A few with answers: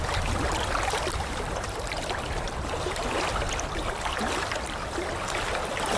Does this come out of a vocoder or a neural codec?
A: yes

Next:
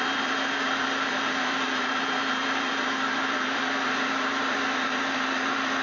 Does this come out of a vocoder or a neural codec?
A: yes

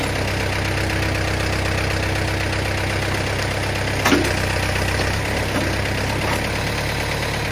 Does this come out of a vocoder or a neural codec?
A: no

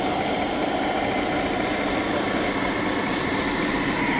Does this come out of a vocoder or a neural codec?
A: yes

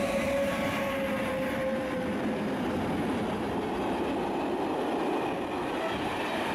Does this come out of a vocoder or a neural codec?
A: no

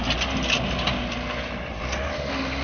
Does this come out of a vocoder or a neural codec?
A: no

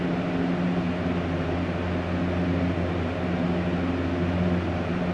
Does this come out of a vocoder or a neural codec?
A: no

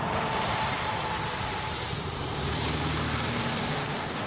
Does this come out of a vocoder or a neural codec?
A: yes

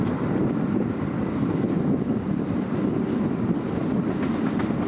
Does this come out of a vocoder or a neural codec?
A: no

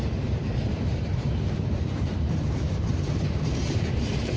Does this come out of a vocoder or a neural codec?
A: yes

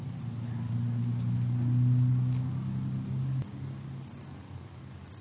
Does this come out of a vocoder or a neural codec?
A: no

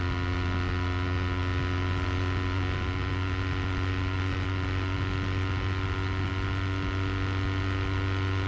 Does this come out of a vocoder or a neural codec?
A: no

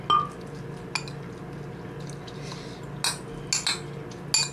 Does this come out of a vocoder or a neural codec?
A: no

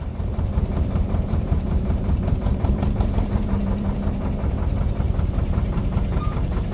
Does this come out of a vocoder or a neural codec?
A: yes